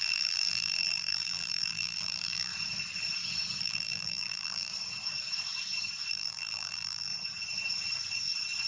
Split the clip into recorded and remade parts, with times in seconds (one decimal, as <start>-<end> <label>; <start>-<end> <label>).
0.0-2.5 remade; 2.5-3.6 recorded; 3.6-4.7 remade; 4.7-6.1 recorded; 6.1-7.1 remade; 7.1-8.7 recorded